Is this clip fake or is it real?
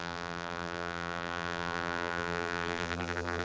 fake